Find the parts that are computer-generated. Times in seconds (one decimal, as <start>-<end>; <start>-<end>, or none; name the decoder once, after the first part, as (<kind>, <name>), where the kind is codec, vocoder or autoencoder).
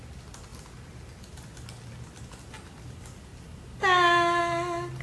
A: none